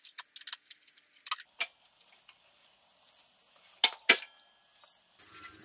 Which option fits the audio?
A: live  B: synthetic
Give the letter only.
A